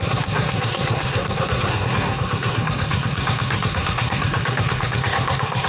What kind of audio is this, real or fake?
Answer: fake